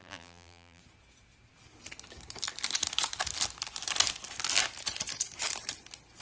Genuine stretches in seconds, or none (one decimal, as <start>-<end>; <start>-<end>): 0.8-6.2